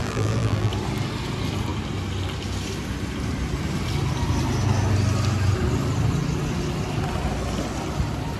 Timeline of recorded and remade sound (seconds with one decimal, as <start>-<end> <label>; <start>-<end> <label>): 0.0-0.7 remade; 0.7-8.4 recorded